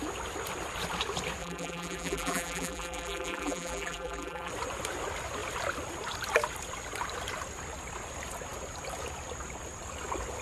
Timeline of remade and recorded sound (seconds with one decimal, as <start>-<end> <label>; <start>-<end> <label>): 0.0-1.4 recorded; 1.4-4.5 remade; 4.5-10.4 recorded